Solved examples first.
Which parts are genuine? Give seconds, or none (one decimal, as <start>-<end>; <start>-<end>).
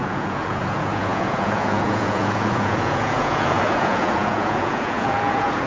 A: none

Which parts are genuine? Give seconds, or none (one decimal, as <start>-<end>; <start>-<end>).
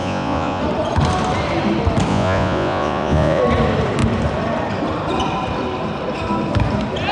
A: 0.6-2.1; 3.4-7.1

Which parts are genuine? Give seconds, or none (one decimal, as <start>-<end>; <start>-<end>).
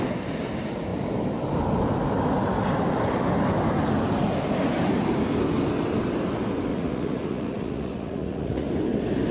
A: 0.0-6.7; 8.7-9.3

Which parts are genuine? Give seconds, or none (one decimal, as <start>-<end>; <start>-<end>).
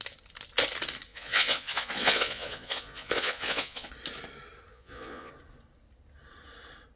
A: 0.0-1.1; 3.9-4.7; 5.3-7.0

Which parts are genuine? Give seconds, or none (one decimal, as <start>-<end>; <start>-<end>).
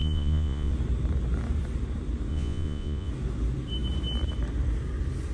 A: 0.7-2.3; 3.1-5.3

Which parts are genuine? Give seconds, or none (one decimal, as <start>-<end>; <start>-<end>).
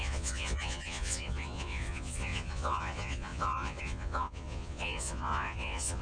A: none